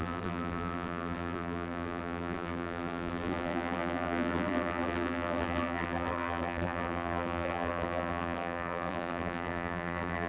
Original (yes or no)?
no